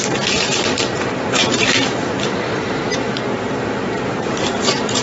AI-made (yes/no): yes